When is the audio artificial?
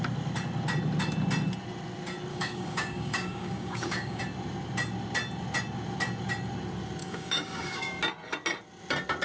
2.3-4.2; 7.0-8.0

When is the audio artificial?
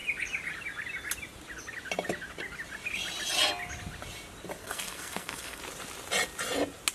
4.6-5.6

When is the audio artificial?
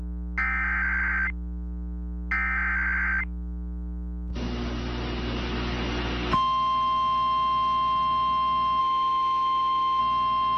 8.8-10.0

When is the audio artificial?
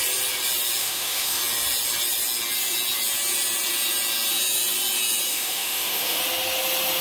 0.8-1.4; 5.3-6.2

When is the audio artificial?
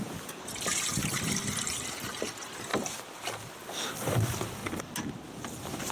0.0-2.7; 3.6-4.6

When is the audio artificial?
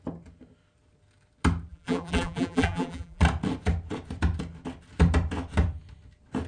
1.7-3.2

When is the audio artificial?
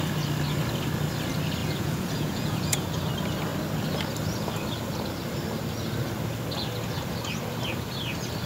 1.6-2.9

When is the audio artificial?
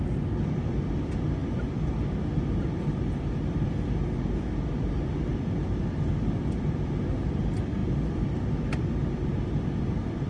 none